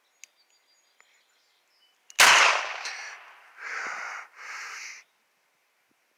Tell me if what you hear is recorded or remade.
recorded